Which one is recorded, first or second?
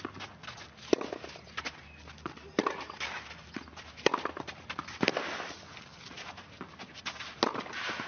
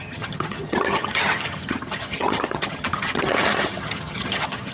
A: first